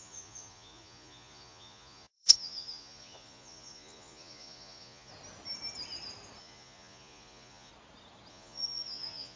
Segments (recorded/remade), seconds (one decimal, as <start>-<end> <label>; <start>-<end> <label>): 0.0-5.1 remade; 5.1-6.4 recorded; 6.4-7.7 remade; 7.7-8.3 recorded; 8.3-9.4 remade